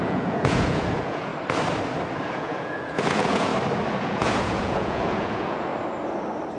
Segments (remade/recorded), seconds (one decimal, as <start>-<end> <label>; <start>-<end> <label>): 0.0-1.3 remade; 1.3-2.3 recorded; 2.3-3.5 remade; 3.5-4.0 recorded; 4.0-5.7 remade; 5.7-6.6 recorded